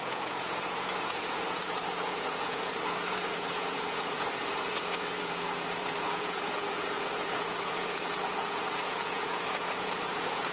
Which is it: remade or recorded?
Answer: remade